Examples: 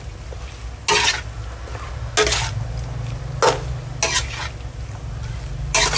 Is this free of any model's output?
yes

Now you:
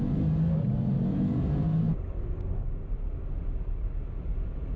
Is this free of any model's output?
yes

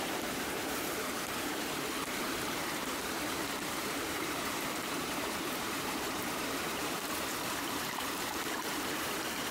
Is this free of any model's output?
no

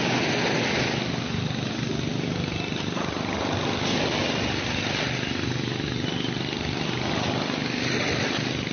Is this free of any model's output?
yes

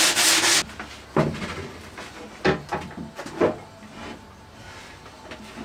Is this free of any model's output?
yes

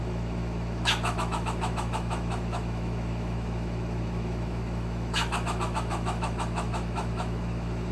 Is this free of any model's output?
no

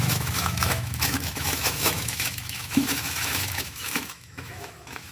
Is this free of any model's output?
no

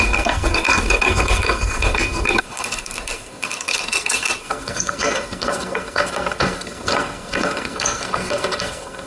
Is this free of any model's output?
no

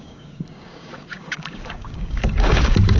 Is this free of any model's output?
no